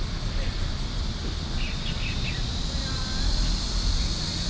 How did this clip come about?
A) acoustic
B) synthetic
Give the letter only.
A